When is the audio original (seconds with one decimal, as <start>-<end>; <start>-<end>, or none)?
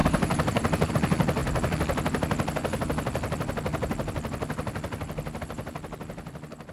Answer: 0.9-6.7